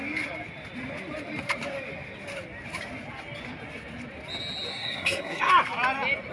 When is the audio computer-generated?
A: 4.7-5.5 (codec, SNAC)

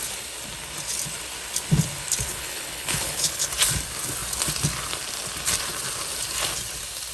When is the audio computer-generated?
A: 2.3-3.5 (codec, HILCodec)

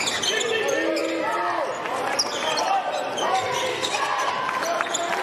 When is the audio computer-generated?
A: 3.7-4.3 (codec, SNAC)